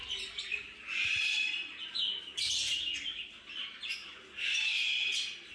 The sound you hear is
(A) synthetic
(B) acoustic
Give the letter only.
B